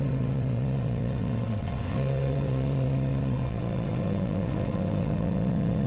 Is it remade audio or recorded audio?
remade